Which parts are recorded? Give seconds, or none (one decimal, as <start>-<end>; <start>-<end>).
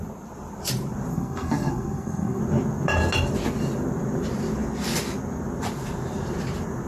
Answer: 0.0-1.1; 2.4-6.9